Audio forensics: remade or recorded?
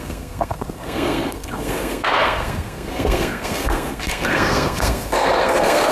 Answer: remade